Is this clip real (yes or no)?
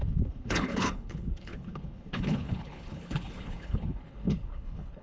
no